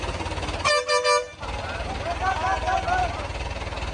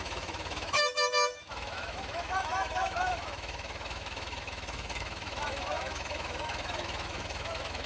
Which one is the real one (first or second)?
first